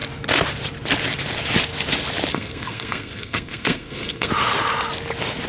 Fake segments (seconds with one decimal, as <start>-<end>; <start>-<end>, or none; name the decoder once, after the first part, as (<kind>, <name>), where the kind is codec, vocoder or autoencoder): 2.3-4.3 (codec, SNAC)